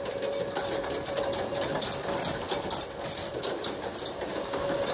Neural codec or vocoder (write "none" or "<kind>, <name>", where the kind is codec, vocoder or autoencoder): none